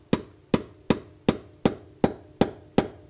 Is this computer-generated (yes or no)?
no